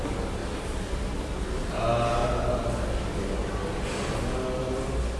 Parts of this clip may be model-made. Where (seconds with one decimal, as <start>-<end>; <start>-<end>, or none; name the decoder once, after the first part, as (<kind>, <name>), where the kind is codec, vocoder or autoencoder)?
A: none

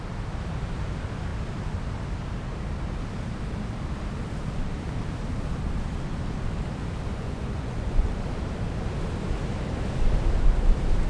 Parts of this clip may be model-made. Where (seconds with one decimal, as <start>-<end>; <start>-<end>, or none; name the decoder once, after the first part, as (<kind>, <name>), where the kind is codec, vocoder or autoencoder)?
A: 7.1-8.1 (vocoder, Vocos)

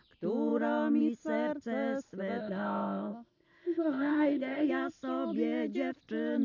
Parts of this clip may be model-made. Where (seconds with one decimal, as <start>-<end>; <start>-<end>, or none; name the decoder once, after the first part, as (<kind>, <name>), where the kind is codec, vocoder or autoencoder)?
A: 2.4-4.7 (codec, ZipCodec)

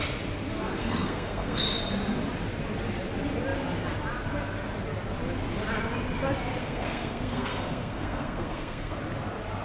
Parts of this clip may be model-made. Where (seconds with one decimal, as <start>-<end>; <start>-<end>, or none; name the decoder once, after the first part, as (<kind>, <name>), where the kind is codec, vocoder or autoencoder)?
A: 0.8-1.6 (codec, SNAC); 6.6-9.0

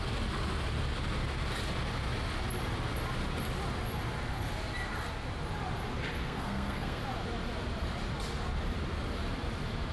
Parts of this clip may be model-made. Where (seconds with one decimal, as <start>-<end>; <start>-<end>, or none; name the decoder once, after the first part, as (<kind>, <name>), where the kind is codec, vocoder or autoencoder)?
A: 6.2-7.0 (codec, SNAC)

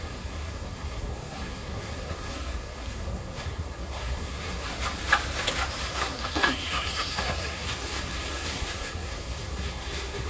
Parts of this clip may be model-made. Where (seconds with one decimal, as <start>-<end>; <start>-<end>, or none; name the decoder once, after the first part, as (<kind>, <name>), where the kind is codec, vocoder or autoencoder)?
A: 0.0-4.7 (codec, SNAC); 5.8-10.3

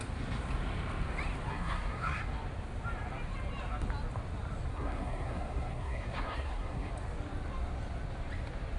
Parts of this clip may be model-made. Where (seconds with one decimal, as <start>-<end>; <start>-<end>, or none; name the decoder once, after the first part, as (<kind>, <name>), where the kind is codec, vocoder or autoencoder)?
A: 1.5-2.2 (codec, SNAC); 4.7-6.9